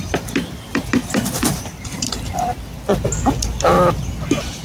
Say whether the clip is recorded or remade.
remade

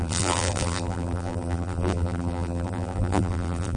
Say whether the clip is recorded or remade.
remade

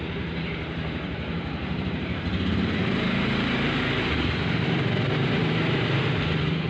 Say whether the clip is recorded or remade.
remade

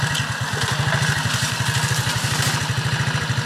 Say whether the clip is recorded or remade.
recorded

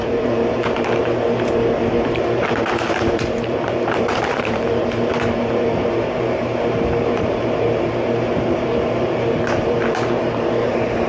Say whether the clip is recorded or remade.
remade